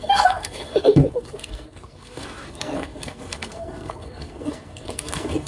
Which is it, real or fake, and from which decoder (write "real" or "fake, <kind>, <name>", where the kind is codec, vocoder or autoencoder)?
fake, codec, SNAC